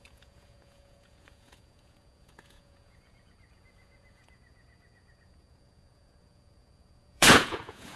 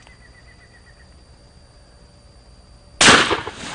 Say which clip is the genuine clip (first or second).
second